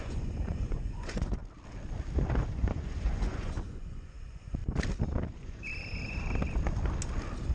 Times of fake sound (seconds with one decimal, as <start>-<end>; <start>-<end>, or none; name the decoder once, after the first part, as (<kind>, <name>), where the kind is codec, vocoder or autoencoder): 0.0-1.4 (vocoder, Vocos); 2.4-4.6; 5.3-5.7